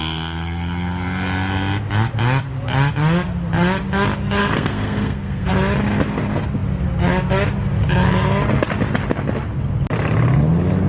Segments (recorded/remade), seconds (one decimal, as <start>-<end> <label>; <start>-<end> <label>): 0.0-4.4 recorded; 4.4-5.5 remade; 5.5-10.9 recorded

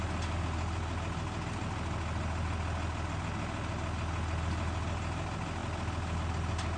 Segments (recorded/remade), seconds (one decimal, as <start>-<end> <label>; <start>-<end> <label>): 0.0-6.8 recorded

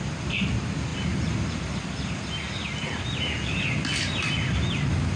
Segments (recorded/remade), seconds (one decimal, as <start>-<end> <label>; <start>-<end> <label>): 0.0-5.2 recorded

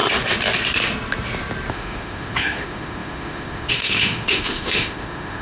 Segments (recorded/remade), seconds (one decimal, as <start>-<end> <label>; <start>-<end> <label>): 0.0-1.7 recorded; 1.7-5.4 remade

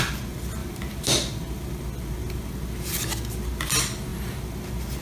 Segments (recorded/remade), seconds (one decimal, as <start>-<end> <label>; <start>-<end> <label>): 0.0-5.0 recorded

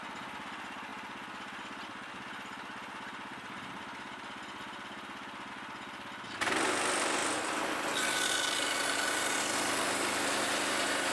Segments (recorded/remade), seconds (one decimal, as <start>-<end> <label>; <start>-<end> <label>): 0.0-11.1 recorded